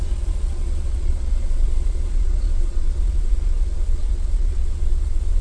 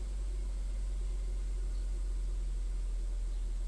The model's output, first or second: first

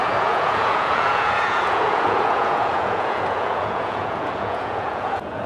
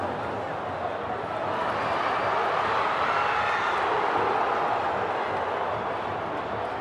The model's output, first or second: first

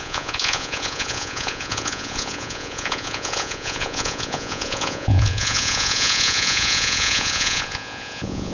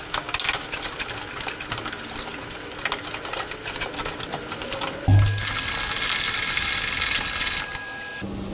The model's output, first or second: first